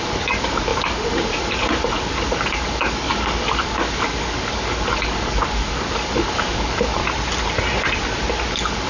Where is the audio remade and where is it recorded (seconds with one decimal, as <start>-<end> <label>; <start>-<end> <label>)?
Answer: 0.0-7.0 remade; 7.0-8.5 recorded; 8.5-8.9 remade